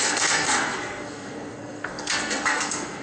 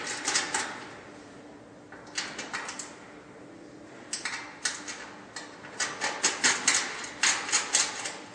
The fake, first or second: first